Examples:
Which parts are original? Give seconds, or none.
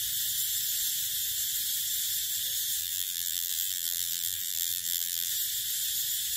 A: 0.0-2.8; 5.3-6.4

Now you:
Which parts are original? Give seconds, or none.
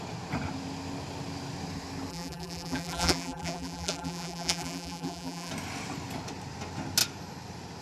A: 0.0-2.1; 5.5-7.8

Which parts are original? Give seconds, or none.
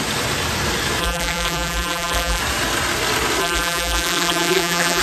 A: 0.0-1.0; 2.4-3.4